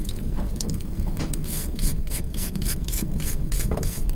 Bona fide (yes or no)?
no